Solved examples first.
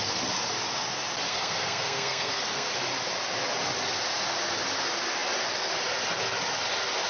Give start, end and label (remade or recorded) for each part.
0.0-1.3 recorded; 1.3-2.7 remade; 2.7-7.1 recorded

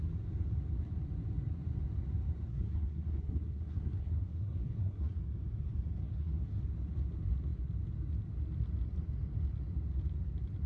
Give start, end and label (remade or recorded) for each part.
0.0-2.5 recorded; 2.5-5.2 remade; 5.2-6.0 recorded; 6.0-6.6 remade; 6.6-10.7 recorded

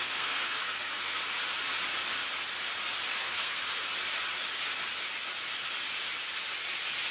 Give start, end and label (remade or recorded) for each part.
0.0-1.2 remade; 1.2-3.1 recorded; 3.1-3.6 remade; 3.6-7.1 recorded